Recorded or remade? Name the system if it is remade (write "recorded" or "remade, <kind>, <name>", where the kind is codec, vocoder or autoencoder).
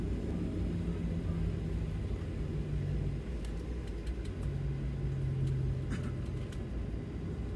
recorded